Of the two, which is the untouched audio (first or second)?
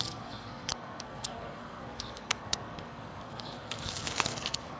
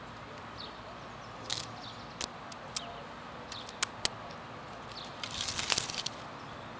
second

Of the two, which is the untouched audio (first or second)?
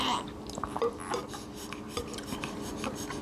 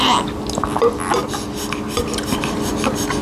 second